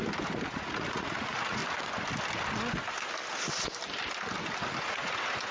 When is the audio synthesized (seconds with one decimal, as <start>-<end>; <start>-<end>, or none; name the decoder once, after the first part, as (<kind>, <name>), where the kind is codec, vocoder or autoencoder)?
0.5-1.6 (vocoder, Vocos); 4.9-5.5